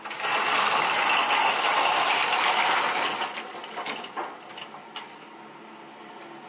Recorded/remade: recorded